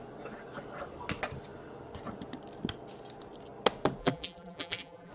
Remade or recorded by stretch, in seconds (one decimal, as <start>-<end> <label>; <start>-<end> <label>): 0.0-4.0 recorded; 4.0-5.1 remade